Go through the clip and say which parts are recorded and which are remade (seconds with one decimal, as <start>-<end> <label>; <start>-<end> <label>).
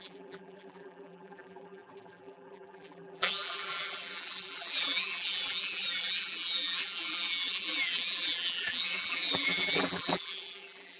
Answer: 0.0-11.0 remade